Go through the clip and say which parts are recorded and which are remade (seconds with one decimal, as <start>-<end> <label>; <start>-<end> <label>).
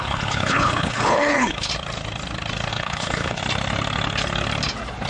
0.0-1.7 remade; 1.7-2.7 recorded; 2.7-3.4 remade; 3.4-5.1 recorded